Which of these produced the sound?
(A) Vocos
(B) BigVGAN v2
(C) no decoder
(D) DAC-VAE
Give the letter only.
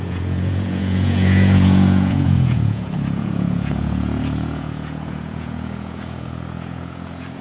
A